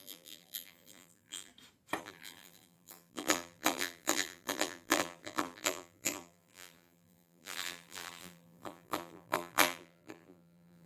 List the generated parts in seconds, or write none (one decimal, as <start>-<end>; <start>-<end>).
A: 0.0-1.5; 2.0-10.9